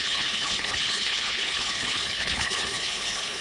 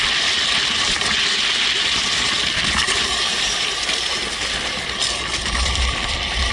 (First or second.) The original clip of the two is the second